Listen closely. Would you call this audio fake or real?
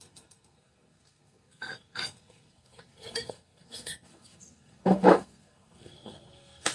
fake